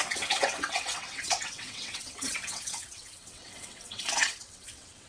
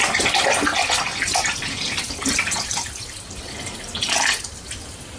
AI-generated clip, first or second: first